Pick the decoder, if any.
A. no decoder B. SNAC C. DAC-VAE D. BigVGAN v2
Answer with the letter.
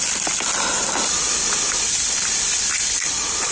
A